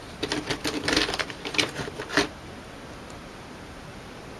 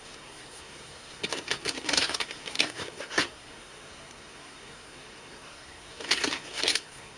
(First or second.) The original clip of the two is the first